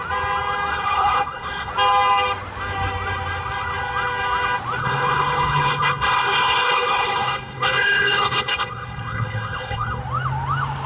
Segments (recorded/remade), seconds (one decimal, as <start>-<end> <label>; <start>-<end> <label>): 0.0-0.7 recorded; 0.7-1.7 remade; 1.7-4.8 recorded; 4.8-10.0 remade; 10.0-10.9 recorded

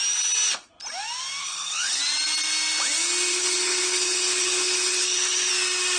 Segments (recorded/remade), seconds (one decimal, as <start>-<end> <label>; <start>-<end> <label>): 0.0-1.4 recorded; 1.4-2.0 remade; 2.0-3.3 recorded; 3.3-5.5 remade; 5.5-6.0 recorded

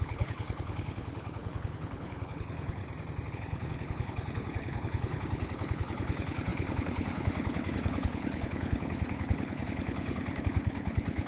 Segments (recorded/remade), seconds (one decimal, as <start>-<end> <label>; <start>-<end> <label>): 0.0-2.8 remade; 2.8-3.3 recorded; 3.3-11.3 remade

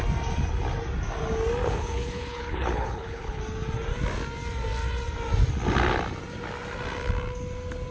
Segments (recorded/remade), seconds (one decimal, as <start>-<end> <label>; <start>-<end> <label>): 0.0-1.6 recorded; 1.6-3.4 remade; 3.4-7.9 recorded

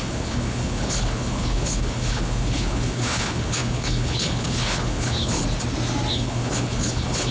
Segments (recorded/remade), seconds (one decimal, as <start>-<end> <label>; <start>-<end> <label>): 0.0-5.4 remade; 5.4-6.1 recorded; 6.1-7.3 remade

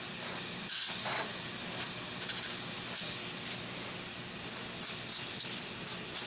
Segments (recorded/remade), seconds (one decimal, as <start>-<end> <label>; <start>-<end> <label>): 0.0-6.3 recorded

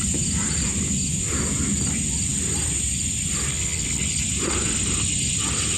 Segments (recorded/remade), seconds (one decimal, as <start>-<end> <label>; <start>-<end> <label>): 0.0-3.5 recorded; 3.5-4.2 remade; 4.2-5.8 recorded